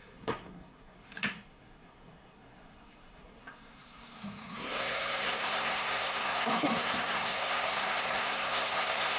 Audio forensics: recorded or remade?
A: remade